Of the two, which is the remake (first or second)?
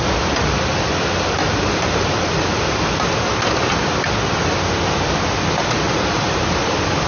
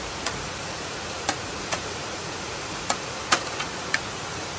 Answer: second